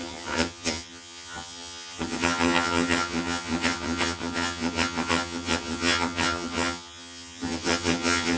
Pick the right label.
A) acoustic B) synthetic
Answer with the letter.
B